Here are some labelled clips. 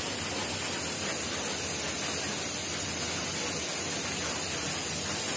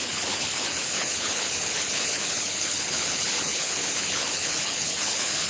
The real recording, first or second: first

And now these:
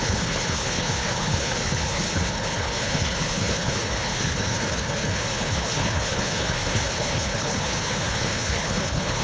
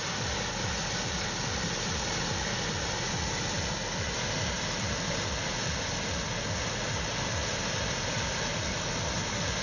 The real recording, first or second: second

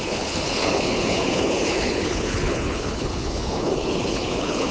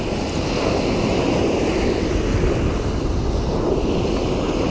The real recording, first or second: second